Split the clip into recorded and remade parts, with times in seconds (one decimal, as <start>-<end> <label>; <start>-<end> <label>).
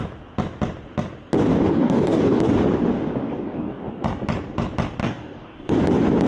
0.0-1.5 recorded; 1.5-2.4 remade; 2.4-3.2 recorded; 3.2-3.8 remade; 3.8-5.0 recorded; 5.0-5.8 remade; 5.8-6.3 recorded